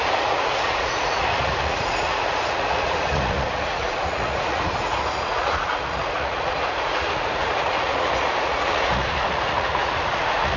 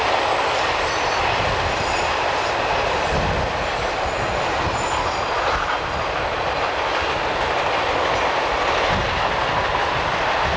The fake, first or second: first